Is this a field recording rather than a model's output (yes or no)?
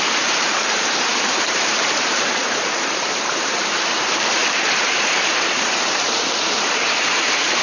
no